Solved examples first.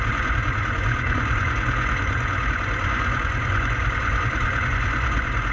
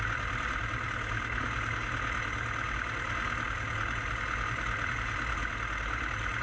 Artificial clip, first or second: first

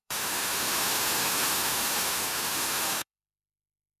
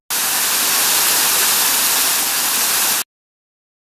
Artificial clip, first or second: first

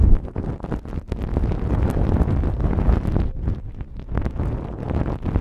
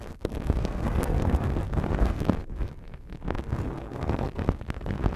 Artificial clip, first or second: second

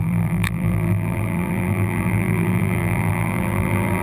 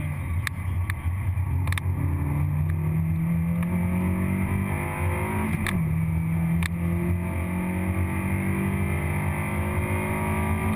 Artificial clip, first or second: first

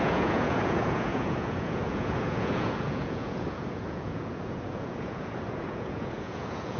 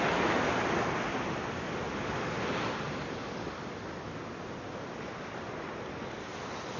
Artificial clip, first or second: first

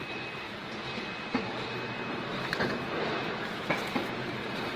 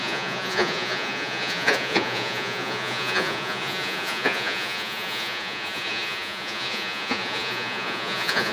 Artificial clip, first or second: second